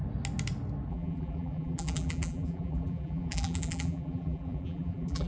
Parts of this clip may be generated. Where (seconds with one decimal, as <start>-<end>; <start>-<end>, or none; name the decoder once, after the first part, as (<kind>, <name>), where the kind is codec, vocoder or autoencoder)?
0.9-5.3 (vocoder, BigVGAN v2)